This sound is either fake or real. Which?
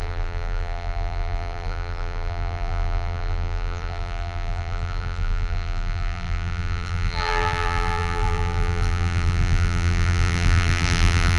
fake